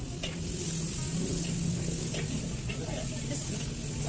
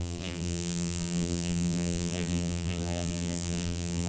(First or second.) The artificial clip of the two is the second